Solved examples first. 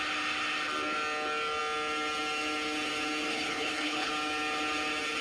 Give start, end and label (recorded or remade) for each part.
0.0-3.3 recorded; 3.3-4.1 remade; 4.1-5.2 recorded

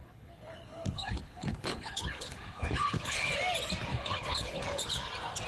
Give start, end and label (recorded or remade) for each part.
0.0-3.3 remade; 3.3-3.9 recorded; 3.9-5.1 remade; 5.1-5.5 recorded

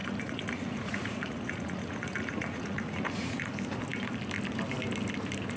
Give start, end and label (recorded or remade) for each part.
0.0-3.4 remade; 3.4-5.6 recorded